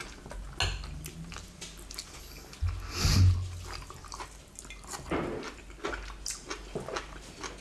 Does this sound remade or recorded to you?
recorded